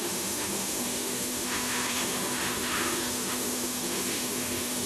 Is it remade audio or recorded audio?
remade